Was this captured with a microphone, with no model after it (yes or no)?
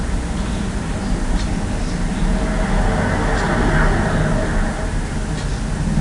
yes